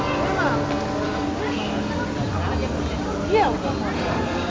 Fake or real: real